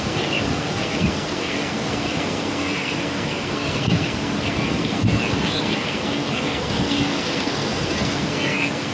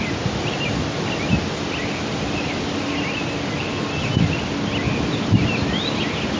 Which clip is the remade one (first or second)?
first